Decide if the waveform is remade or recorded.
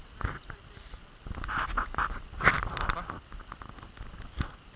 recorded